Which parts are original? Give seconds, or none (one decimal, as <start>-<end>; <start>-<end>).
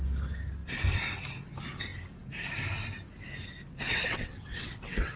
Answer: 0.0-3.9